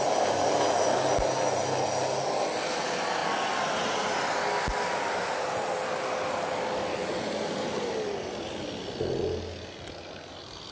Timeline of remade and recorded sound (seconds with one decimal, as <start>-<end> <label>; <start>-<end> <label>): 0.0-10.7 recorded